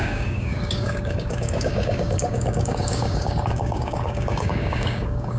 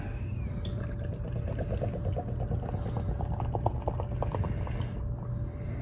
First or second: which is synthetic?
first